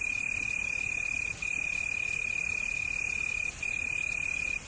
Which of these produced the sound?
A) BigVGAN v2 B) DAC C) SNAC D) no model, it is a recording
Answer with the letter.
D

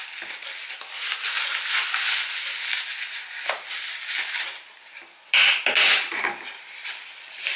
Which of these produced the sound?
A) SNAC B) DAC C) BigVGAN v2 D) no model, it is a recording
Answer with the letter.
D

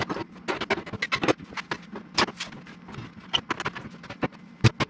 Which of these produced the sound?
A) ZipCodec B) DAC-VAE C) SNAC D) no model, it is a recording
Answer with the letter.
D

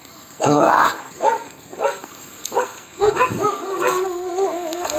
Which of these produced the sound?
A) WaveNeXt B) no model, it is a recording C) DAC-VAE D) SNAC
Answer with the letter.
D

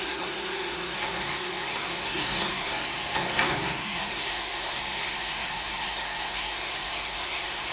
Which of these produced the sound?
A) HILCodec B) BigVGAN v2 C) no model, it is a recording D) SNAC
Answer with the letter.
D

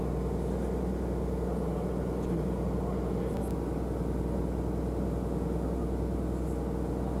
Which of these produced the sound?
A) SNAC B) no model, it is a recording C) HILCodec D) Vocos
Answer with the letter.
B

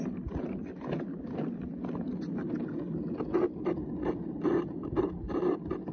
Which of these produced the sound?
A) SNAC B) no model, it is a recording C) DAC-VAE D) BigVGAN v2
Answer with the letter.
B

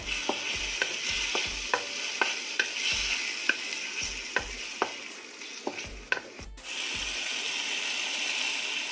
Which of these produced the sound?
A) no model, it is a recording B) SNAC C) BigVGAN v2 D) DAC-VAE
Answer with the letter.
A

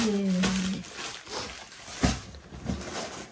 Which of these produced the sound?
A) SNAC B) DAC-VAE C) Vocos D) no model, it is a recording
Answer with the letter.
D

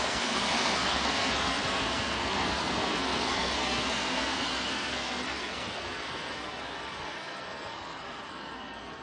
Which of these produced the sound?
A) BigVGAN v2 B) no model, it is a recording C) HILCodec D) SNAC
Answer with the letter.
D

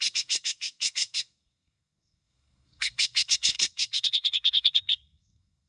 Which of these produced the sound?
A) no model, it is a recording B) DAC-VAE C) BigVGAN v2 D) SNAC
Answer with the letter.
D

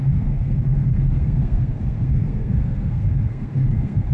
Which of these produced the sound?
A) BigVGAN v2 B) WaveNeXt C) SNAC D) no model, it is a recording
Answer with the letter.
C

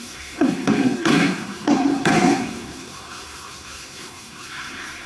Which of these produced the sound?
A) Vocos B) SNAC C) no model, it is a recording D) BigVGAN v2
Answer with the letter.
B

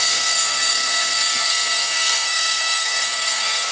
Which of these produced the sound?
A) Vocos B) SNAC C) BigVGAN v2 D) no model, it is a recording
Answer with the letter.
B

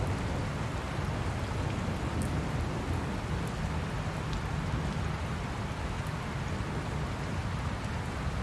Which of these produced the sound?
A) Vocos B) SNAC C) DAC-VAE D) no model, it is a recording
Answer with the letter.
D